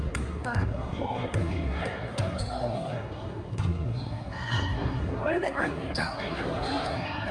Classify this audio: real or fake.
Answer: fake